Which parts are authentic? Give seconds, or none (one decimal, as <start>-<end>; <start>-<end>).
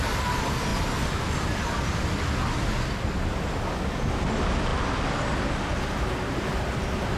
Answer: 0.0-7.2